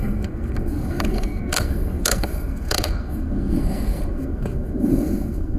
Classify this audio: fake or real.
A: fake